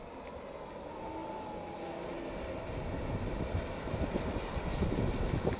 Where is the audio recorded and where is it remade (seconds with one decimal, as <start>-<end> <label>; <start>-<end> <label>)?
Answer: 0.0-5.6 recorded